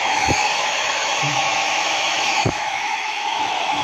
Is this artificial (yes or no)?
yes